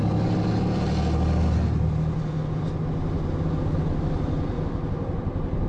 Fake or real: real